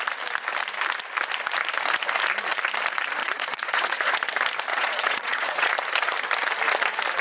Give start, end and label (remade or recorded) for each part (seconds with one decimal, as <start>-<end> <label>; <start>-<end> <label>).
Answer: 0.0-3.2 recorded; 3.2-4.3 remade; 4.3-4.7 recorded; 4.7-5.7 remade; 5.7-7.2 recorded